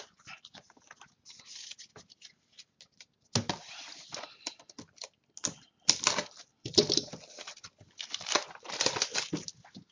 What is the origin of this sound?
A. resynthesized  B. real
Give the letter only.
B